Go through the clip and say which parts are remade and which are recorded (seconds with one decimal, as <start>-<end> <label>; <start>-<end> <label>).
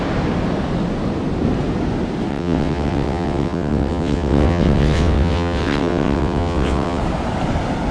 0.0-2.3 recorded; 2.3-7.0 remade; 7.0-7.9 recorded